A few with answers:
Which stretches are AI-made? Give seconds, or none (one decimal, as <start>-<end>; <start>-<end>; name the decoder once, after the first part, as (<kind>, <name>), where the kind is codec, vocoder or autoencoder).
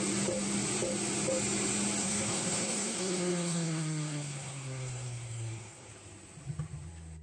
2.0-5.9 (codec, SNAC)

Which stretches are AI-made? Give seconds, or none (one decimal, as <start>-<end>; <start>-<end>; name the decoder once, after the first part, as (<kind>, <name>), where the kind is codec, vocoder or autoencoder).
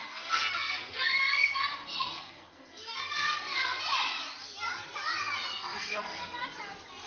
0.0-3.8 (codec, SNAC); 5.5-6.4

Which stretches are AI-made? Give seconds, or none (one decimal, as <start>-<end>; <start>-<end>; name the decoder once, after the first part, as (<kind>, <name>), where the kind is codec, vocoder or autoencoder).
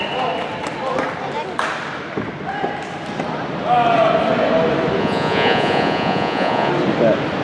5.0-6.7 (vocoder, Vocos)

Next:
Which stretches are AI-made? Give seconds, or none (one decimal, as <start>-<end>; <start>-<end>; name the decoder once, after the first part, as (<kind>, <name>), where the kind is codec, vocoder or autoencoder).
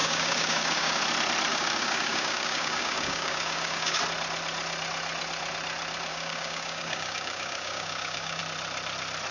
0.0-1.0 (codec, DAC); 1.5-4.0; 6.1-8.4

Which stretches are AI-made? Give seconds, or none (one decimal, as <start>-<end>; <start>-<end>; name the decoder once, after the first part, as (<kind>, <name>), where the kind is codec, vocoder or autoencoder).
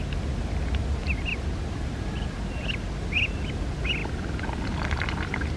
none